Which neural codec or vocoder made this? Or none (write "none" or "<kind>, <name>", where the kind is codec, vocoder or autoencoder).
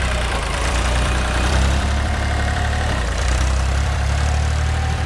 vocoder, BigVGAN v2